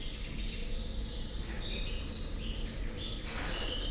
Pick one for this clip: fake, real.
real